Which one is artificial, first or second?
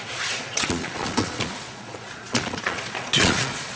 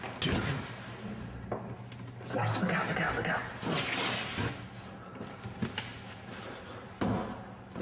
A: first